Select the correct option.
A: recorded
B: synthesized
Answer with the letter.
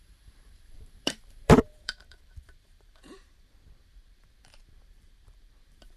B